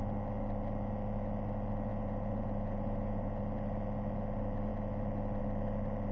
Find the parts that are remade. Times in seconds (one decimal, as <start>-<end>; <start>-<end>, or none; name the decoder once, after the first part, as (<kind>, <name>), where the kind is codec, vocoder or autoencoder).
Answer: 1.9-3.4 (vocoder, Vocos)